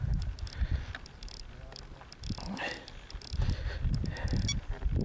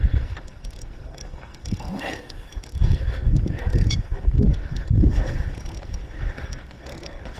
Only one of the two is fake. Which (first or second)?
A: second